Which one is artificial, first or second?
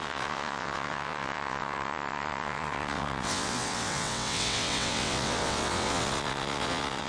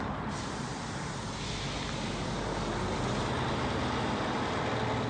first